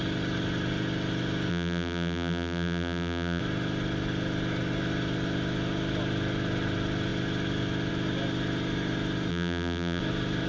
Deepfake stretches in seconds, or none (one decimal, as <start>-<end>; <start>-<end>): 1.5-3.4; 9.3-10.0